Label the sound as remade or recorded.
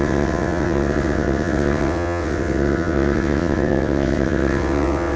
remade